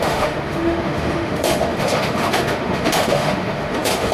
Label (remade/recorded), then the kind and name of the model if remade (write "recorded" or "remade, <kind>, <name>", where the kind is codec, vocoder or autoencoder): remade, autoencoder, DAC-VAE